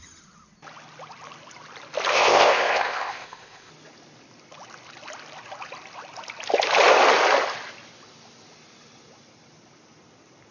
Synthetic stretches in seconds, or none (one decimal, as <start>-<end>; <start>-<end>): 2.1-3.7